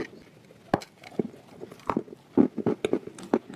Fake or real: real